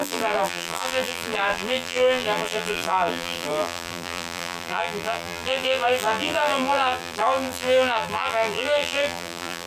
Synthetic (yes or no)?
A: yes